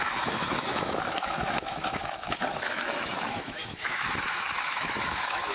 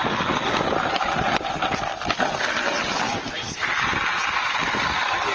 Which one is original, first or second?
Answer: second